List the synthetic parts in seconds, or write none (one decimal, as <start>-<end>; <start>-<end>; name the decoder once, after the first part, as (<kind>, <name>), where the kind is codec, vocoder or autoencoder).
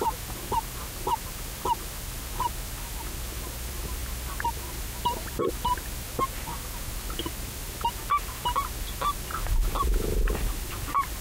none